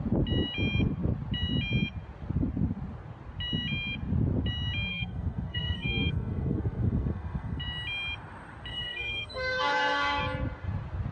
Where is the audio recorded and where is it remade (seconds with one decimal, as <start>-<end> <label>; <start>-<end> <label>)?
0.0-4.9 recorded; 4.9-7.6 remade; 7.6-8.7 recorded; 8.7-10.2 remade; 10.2-11.1 recorded